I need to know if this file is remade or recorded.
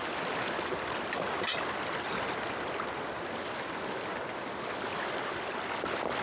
recorded